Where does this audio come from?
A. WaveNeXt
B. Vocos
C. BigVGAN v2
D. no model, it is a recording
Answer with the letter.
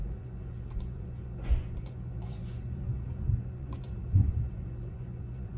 B